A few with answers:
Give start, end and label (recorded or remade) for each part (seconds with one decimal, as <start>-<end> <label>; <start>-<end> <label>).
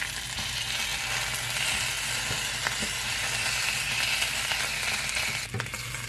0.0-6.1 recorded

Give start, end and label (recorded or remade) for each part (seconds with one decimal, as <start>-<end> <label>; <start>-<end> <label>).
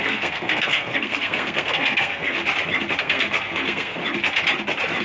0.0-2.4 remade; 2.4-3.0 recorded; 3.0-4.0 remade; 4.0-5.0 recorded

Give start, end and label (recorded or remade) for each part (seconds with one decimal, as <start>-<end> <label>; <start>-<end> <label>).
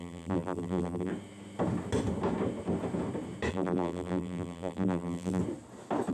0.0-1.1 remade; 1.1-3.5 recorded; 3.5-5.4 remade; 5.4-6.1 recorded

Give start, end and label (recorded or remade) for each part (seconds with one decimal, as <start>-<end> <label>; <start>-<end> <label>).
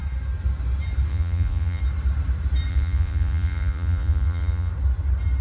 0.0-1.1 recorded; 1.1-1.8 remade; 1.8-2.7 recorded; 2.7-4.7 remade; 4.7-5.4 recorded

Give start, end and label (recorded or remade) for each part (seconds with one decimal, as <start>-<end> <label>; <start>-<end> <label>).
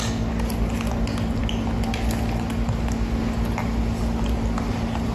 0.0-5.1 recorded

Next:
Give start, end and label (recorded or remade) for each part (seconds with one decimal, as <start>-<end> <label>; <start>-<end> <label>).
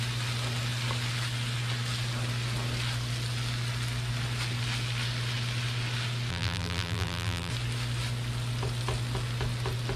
0.0-6.3 recorded; 6.3-7.5 remade; 7.5-10.0 recorded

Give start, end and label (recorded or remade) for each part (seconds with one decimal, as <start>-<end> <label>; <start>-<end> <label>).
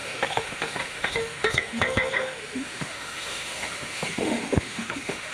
0.0-5.3 remade